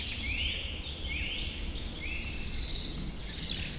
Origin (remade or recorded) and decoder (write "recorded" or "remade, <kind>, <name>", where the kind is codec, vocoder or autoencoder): recorded